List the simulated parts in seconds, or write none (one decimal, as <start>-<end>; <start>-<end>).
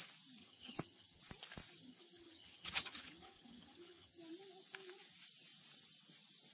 0.4-1.2; 1.8-4.2